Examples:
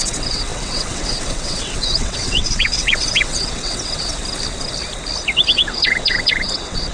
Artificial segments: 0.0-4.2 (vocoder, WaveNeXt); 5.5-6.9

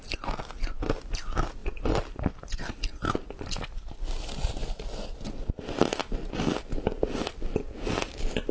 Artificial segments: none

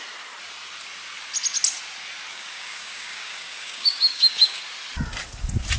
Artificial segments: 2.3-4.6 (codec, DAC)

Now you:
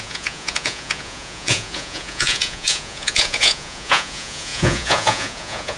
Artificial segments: 0.0-5.8 (vocoder, Vocos)

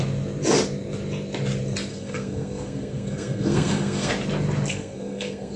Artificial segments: 1.9-4.1 (codec, SNAC); 4.7-5.6

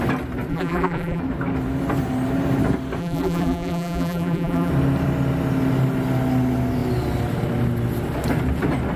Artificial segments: 0.5-1.2 (vocoder, BigVGAN v2); 3.0-4.7